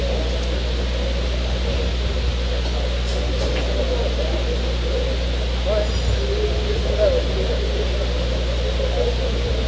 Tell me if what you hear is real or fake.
real